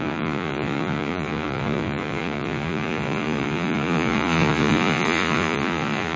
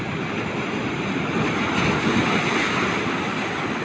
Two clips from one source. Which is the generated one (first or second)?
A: first